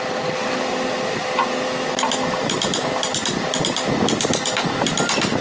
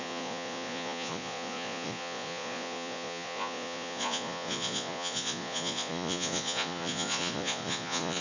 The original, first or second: first